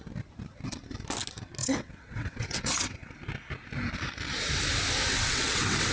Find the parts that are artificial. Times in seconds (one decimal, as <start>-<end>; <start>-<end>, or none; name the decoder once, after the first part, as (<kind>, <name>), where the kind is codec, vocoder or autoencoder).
1.6-3.1 (vocoder, WaveNeXt); 5.1-5.9